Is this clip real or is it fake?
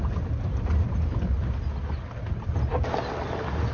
real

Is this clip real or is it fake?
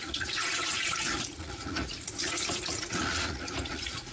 fake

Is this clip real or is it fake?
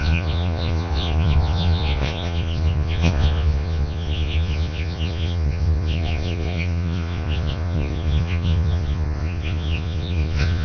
fake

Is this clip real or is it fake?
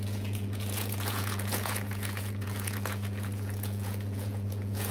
fake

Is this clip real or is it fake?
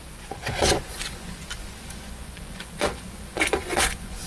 fake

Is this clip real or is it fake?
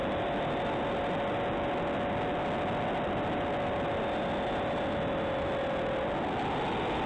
real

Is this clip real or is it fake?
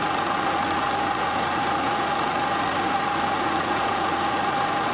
fake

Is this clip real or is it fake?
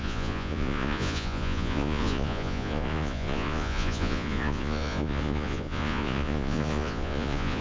fake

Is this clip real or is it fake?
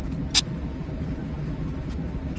real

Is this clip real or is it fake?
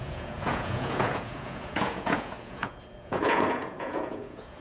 fake